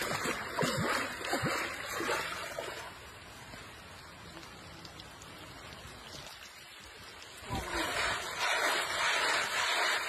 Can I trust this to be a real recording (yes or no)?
yes